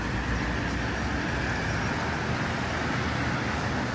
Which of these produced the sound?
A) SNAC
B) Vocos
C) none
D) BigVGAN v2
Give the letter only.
C